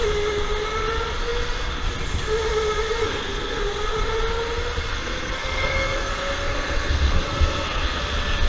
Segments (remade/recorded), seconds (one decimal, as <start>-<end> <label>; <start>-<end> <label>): 0.0-3.0 recorded; 3.0-3.6 remade; 3.6-4.9 recorded; 4.9-8.0 remade; 8.0-8.5 recorded

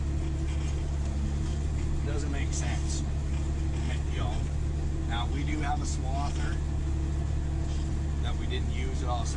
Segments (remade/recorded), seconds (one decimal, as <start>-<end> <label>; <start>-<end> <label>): 0.0-9.4 recorded

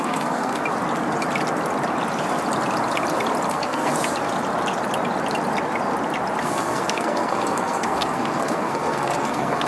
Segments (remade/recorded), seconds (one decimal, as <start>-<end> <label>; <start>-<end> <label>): 0.0-0.6 remade; 0.6-3.5 recorded; 3.5-3.9 remade; 3.9-6.4 recorded; 6.4-9.7 remade

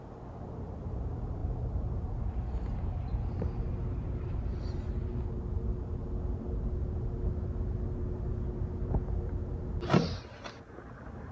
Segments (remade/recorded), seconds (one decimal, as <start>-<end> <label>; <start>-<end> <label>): 0.0-11.3 recorded

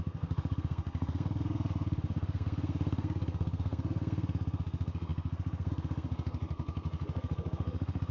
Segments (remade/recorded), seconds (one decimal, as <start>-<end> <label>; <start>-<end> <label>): 0.0-8.1 remade

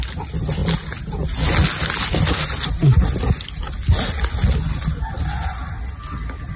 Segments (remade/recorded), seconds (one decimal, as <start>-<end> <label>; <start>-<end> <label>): 0.0-6.6 recorded